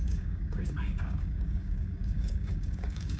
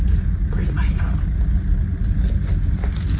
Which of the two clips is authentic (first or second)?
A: second